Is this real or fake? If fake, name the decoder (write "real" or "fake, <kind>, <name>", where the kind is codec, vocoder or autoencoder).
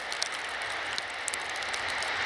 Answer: real